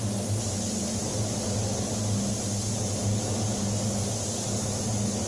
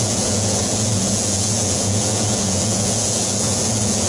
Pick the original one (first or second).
first